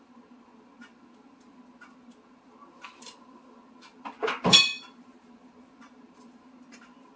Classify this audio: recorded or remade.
recorded